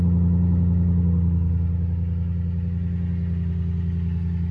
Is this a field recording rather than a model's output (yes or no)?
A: yes